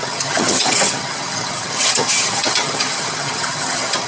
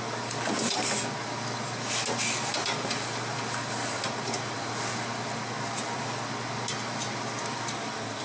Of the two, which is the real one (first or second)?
second